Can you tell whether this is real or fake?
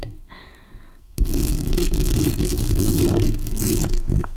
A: fake